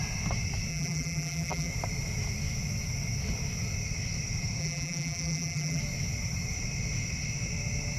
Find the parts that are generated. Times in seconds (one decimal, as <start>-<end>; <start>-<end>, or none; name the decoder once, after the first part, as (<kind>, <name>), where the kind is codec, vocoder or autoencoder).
0.7-1.7 (vocoder, BigVGAN v2); 4.6-5.8